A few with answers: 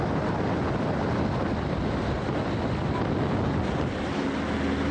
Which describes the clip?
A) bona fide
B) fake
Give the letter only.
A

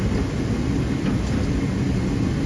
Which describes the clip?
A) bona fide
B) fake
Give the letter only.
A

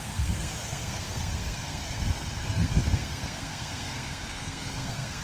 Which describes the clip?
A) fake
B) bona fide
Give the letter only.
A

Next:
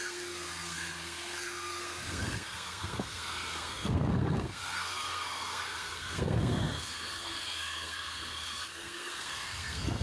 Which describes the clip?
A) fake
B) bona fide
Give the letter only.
A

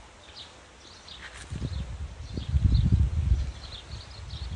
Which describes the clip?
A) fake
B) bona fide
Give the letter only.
B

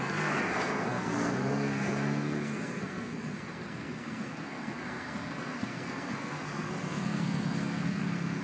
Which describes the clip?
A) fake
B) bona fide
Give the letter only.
A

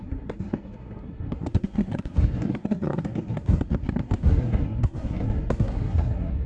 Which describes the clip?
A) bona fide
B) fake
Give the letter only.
B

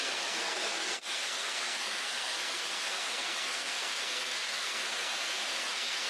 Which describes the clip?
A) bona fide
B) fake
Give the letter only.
B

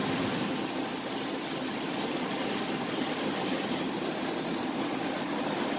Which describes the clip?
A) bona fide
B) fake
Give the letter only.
A